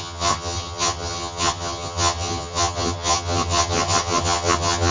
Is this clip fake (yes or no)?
yes